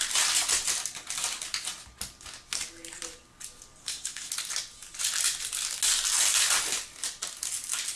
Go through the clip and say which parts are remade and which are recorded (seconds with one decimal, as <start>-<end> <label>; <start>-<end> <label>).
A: 0.0-3.8 recorded; 3.8-4.3 remade; 4.3-8.0 recorded